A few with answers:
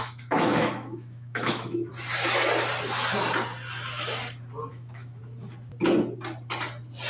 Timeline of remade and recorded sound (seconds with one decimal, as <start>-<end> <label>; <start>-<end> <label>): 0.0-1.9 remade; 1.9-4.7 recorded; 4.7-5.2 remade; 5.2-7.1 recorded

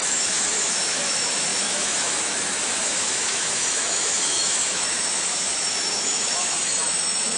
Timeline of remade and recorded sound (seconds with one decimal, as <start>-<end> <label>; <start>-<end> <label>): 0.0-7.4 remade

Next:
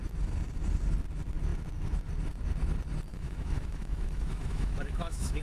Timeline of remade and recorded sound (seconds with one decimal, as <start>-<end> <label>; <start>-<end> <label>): 0.0-3.1 recorded; 3.1-5.4 remade

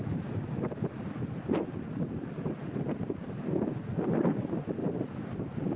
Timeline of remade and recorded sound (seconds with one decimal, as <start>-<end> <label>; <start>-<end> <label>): 0.0-5.8 recorded

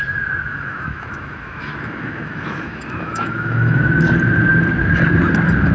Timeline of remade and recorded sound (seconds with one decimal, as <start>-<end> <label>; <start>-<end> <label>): 0.0-0.5 recorded; 0.5-3.9 remade; 3.9-5.7 recorded

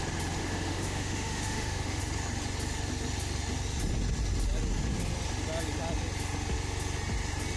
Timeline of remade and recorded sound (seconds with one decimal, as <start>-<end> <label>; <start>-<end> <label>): 0.0-0.4 recorded; 0.4-2.0 remade; 2.0-7.6 recorded